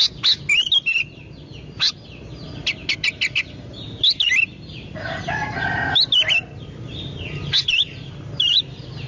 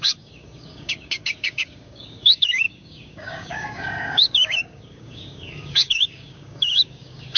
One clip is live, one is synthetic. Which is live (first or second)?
first